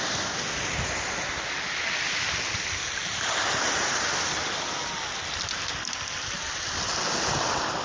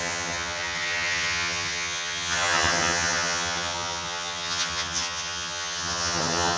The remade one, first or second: second